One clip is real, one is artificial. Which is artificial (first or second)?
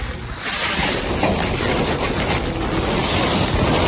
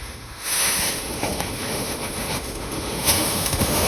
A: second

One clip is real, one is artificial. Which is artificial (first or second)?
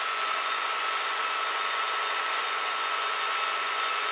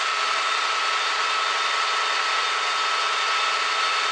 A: first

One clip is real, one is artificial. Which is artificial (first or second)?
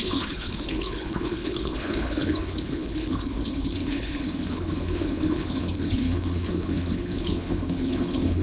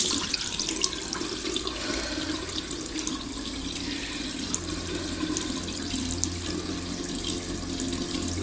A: first